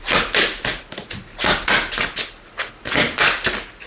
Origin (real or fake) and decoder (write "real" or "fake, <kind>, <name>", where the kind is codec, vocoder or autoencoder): real